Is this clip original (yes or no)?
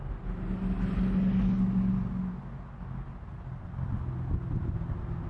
yes